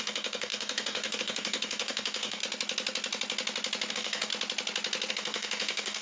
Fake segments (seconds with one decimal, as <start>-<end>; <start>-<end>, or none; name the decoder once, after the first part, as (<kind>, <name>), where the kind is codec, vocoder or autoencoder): 0.0-2.4 (codec, DAC); 3.9-4.3; 5.1-6.0